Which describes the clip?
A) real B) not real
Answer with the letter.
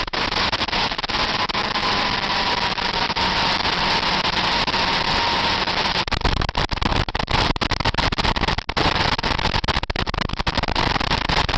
A